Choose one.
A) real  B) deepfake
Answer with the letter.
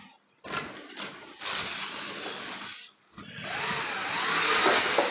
A